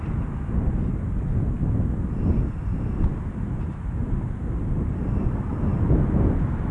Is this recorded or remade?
recorded